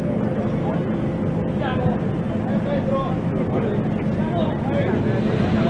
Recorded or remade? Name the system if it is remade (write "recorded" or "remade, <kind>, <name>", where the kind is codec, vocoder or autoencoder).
recorded